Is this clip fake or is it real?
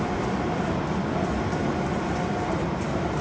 fake